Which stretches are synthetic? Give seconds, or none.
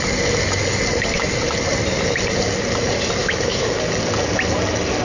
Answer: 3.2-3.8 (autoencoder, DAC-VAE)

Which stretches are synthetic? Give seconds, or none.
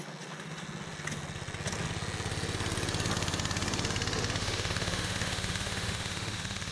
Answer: 4.4-6.7 (autoencoder, DAC-VAE)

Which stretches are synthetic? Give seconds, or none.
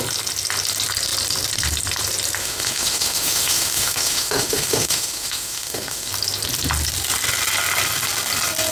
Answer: 2.4-6.1 (autoencoder, DAC-VAE)